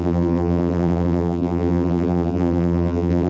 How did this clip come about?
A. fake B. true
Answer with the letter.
A